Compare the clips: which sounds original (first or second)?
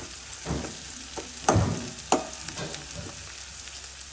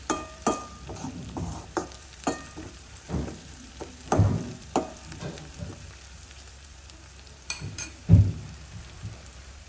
first